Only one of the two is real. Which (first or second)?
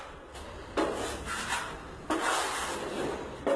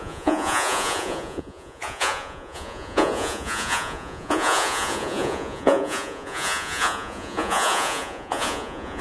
first